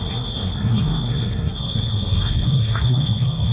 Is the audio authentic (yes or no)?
no